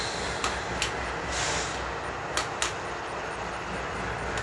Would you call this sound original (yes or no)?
yes